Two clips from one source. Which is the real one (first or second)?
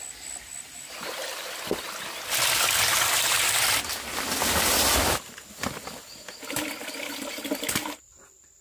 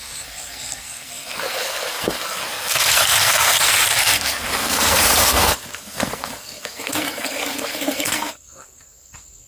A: first